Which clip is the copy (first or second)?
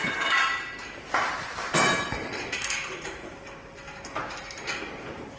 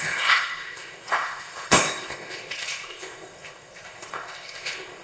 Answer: second